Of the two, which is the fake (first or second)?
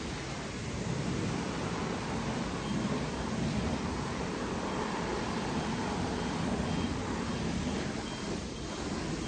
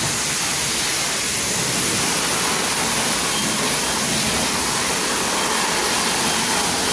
first